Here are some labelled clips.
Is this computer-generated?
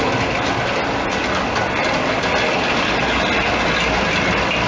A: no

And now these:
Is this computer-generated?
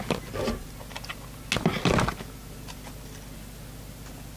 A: no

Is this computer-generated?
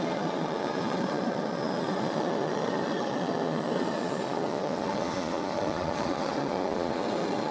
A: yes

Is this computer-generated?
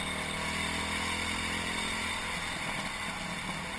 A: no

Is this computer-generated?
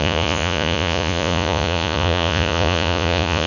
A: yes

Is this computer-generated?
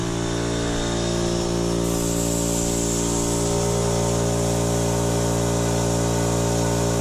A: no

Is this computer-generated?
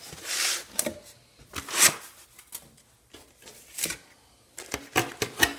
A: no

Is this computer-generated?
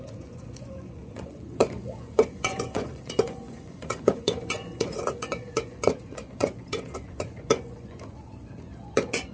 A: yes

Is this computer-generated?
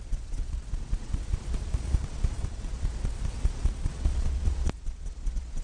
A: yes